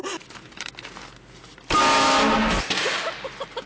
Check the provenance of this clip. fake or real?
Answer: real